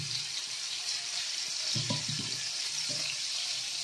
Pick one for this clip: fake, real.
fake